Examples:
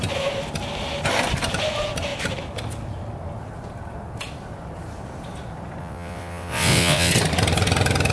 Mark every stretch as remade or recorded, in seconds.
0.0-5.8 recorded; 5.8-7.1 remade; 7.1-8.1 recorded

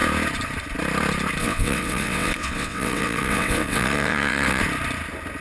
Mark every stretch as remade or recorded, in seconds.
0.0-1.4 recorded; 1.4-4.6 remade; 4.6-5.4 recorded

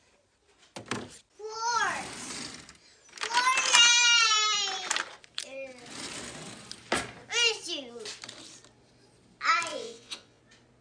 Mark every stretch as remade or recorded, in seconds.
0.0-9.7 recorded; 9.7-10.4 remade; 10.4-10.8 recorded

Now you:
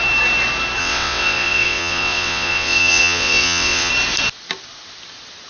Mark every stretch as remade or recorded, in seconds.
0.0-0.8 recorded; 0.8-3.9 remade; 3.9-5.5 recorded

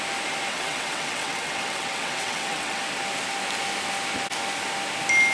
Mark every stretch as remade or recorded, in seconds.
0.0-0.5 recorded; 0.5-2.8 remade; 2.8-5.3 recorded

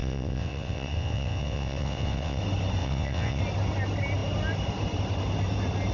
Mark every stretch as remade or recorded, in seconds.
0.0-2.4 remade; 2.4-2.8 recorded; 2.8-3.4 remade; 3.4-5.9 recorded